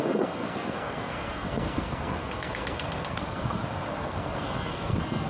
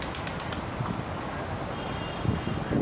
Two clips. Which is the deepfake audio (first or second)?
first